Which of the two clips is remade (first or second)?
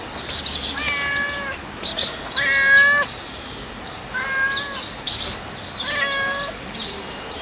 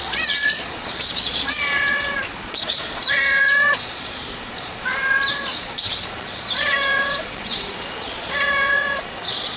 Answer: second